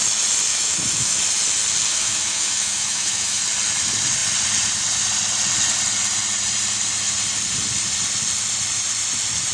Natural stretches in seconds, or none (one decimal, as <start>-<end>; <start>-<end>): 0.0-0.5; 1.2-1.9; 3.4-9.5